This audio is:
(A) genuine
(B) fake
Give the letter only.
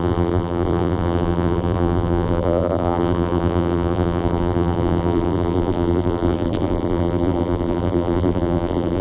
B